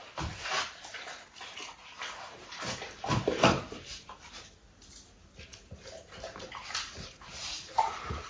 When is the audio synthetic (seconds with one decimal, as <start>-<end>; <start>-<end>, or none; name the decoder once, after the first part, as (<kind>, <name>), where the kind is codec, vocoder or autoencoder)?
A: none